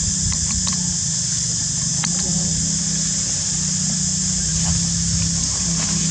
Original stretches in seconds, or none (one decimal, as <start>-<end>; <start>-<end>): 0.0-6.1